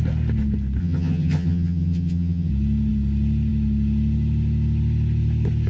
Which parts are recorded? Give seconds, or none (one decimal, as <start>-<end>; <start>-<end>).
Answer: 0.0-0.8; 2.5-5.7